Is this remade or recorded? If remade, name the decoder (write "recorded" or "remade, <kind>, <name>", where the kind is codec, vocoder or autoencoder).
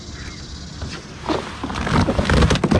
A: recorded